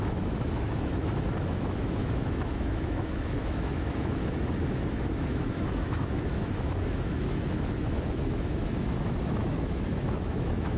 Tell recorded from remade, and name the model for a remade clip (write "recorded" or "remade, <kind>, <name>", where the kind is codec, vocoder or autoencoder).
remade, autoencoder, DAC-VAE